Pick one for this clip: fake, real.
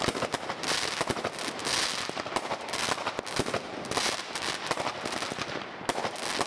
real